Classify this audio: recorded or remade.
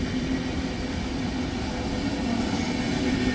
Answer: recorded